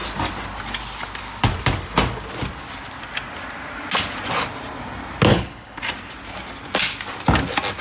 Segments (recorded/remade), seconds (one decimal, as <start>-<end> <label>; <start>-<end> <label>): 0.0-5.3 recorded; 5.3-5.8 remade; 5.8-7.8 recorded